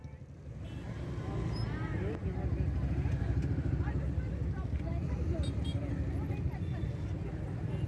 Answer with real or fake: real